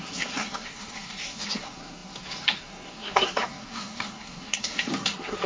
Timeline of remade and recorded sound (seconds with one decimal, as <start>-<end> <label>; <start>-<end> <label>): 0.0-5.5 remade

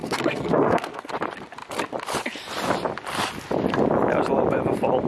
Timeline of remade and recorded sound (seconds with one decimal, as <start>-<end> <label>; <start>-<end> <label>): 0.0-1.1 remade; 1.1-5.1 recorded

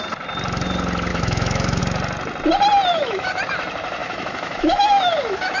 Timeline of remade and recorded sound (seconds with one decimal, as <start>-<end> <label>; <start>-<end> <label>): 0.0-1.1 recorded; 1.1-1.8 remade; 1.8-2.9 recorded; 2.9-3.4 remade; 3.4-4.0 recorded; 4.0-5.6 remade

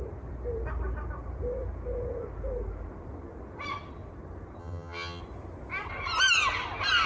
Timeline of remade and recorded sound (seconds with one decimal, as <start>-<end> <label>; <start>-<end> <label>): 0.0-4.6 recorded; 4.6-5.2 remade; 5.2-7.1 recorded

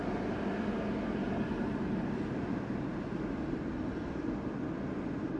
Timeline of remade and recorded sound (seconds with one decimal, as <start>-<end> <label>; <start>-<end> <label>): 0.0-0.5 remade; 0.5-1.2 recorded; 1.2-2.3 remade; 2.3-5.4 recorded